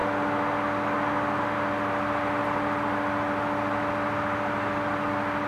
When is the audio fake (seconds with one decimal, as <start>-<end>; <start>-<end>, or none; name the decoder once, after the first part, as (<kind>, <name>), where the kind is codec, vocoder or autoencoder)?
none